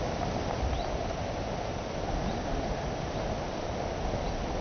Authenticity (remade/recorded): recorded